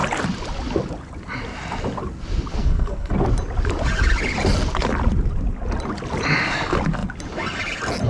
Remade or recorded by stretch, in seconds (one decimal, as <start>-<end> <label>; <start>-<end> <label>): 0.0-2.5 recorded; 2.5-3.1 remade; 3.1-8.1 recorded